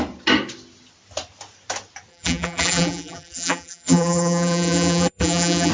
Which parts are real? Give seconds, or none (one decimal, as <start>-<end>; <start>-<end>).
0.0-2.1